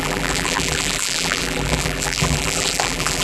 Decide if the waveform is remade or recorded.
remade